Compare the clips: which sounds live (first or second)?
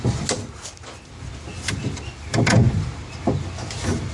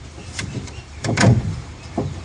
first